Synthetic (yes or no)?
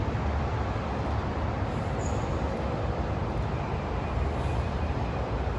no